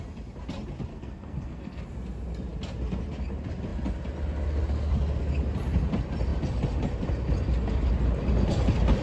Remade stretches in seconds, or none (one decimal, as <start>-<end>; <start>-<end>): 0.9-1.8